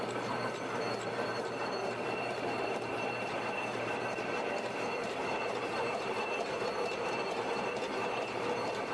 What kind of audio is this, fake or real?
fake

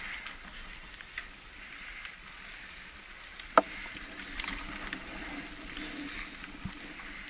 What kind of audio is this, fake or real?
real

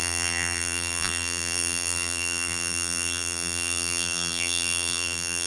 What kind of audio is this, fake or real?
fake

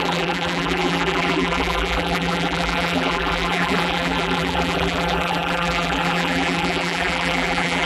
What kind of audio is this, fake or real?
fake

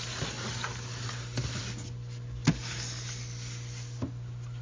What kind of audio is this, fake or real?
real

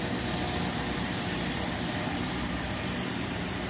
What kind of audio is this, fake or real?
fake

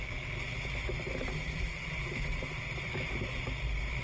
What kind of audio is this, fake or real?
real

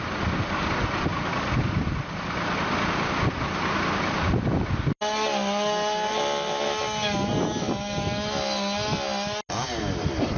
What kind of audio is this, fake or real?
real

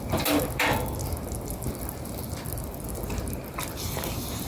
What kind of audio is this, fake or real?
real